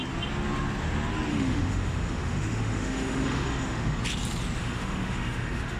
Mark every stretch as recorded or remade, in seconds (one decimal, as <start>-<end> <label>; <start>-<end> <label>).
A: 0.0-1.3 recorded; 1.3-4.0 remade; 4.0-4.6 recorded; 4.6-5.8 remade